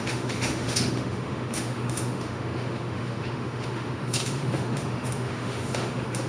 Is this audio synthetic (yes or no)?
yes